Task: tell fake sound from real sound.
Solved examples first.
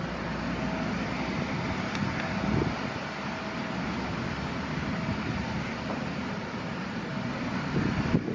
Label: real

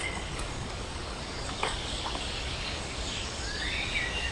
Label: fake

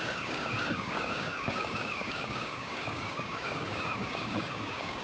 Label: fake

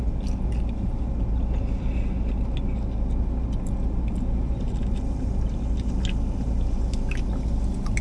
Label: real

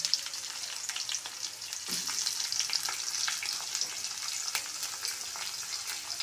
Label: real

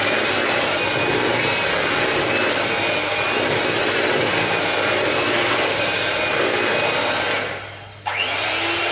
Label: real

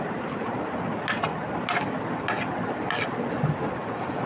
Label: real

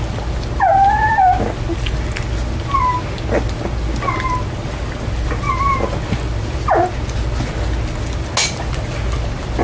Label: real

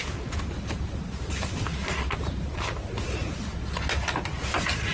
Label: real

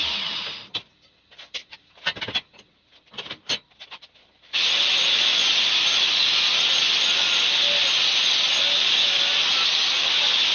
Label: real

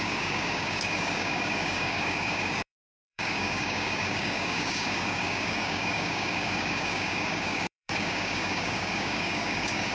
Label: fake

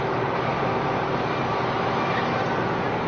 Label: real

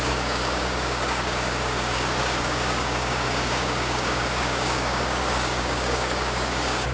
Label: fake